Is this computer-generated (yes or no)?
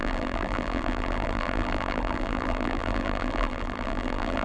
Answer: yes